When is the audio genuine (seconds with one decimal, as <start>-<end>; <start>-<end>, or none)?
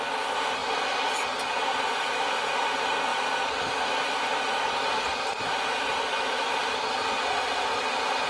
0.0-6.1; 6.6-8.3